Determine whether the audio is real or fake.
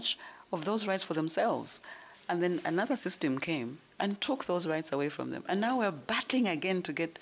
real